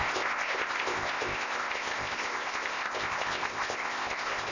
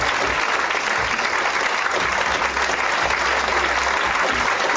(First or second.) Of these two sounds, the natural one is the second